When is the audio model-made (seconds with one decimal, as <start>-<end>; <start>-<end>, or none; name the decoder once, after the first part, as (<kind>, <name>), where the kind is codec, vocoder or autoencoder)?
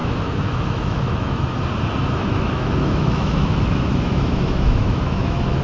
0.0-1.5 (autoencoder, DAC-VAE); 2.1-5.6